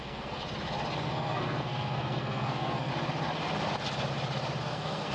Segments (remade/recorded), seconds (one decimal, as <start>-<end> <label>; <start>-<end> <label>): 0.0-0.4 remade; 0.4-1.0 recorded; 1.0-2.9 remade; 2.9-4.6 recorded; 4.6-5.1 remade